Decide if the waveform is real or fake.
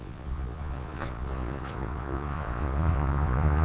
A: fake